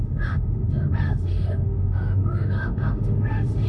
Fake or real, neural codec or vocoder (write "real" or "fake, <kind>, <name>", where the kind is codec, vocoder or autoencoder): fake, autoencoder, DAC-VAE